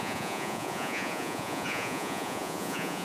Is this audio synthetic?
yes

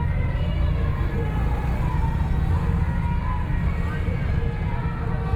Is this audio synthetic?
no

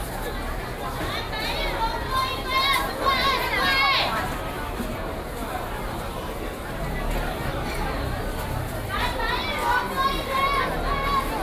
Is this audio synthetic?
no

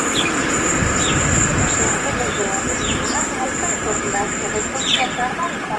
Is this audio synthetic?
no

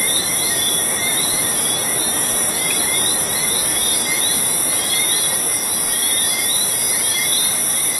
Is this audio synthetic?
no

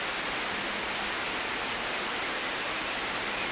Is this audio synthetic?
no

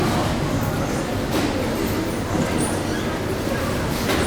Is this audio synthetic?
no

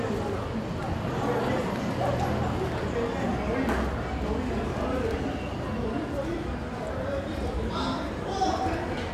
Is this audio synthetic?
no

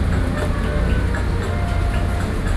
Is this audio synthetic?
no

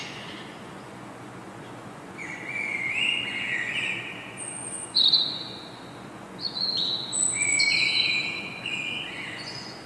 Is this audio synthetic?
yes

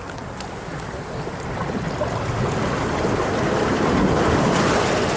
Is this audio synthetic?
no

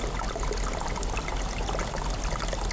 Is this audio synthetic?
no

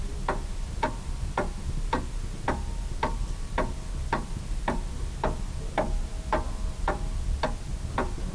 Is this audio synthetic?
no